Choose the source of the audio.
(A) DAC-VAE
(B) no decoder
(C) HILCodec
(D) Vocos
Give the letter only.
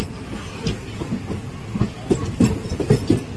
B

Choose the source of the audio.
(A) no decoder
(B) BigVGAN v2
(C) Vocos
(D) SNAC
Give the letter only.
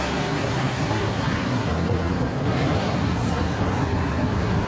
D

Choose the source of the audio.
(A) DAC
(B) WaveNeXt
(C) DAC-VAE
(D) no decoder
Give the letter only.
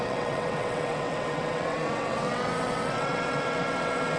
B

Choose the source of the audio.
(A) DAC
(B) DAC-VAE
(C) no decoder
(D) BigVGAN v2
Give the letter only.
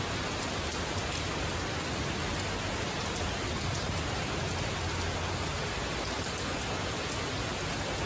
C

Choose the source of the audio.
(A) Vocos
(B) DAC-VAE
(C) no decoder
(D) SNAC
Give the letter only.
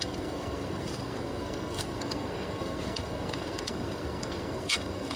D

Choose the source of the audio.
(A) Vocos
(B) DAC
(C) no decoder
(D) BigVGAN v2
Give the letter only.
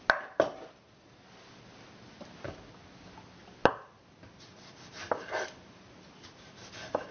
C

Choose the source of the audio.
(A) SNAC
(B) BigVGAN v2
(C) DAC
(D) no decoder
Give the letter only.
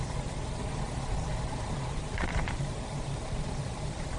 B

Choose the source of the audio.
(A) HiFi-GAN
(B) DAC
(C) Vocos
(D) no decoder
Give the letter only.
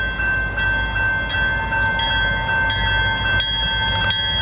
D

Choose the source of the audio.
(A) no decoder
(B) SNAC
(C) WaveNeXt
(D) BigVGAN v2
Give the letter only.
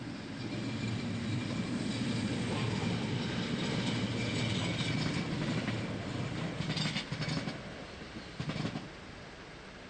A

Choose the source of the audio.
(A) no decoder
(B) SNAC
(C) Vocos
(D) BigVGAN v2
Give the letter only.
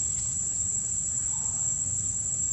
D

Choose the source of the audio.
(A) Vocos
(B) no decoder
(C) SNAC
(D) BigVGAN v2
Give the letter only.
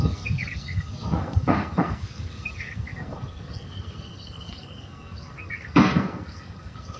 C